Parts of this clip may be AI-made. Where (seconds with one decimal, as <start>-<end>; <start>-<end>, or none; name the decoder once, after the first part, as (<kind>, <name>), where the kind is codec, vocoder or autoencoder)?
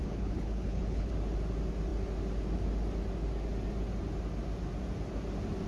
0.0-1.1 (codec, HILCodec)